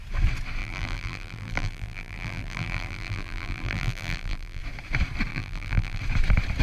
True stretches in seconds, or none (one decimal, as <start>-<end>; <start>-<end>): 0.0-0.6; 4.6-5.3; 6.0-6.6